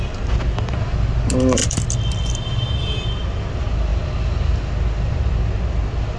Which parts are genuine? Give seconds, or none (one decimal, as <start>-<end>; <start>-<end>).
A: 0.0-6.2